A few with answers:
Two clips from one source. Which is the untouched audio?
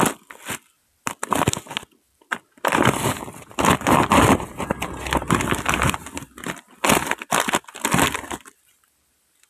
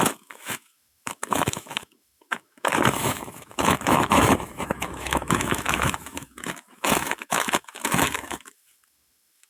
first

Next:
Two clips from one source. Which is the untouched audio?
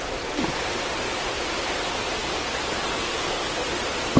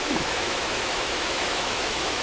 first